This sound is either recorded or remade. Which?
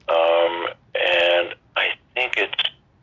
recorded